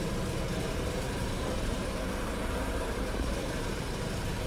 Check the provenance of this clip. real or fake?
fake